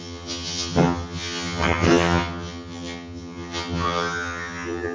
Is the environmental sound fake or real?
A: fake